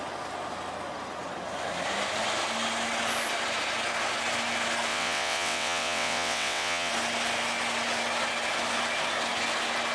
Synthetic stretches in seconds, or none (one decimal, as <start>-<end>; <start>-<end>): 4.9-6.9